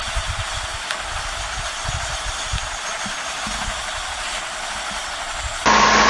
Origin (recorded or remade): recorded